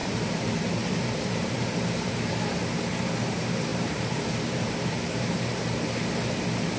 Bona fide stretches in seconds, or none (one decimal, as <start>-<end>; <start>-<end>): 2.4-3.7; 5.6-6.8